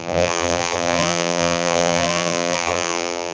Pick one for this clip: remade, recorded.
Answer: remade